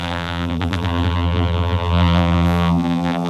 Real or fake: fake